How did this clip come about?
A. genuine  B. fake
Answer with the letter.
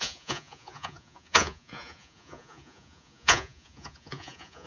B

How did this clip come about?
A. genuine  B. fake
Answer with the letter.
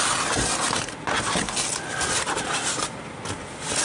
A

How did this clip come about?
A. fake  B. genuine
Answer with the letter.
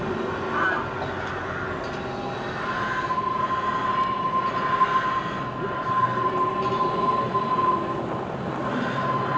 B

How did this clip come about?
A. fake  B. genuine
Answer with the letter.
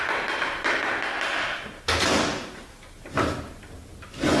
B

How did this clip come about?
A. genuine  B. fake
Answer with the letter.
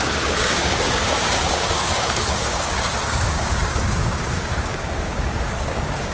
B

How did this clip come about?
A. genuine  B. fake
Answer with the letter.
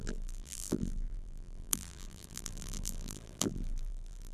B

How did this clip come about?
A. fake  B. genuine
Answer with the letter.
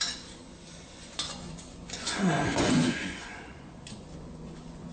A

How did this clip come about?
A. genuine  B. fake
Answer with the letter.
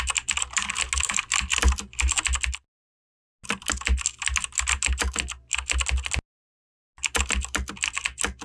A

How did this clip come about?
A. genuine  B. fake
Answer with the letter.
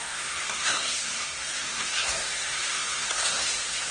B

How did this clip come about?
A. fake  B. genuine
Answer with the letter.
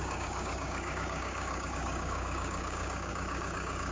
A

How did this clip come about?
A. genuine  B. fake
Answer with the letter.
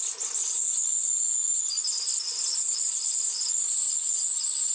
A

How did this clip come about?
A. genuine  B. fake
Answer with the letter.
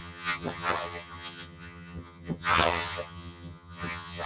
B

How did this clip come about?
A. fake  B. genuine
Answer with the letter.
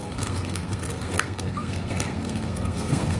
A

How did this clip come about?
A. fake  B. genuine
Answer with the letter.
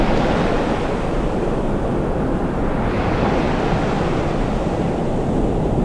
B